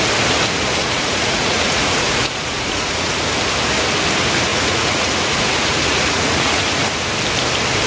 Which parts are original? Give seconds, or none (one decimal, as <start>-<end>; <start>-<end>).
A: 0.0-0.8; 3.3-4.5; 6.8-7.9